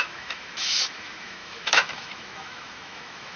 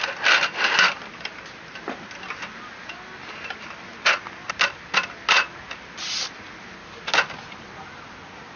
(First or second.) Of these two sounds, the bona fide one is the second